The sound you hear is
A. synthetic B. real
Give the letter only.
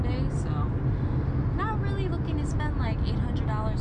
B